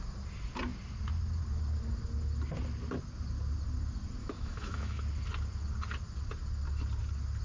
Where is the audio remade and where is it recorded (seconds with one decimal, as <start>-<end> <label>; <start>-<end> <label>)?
0.0-4.2 recorded; 4.2-5.0 remade; 5.0-7.4 recorded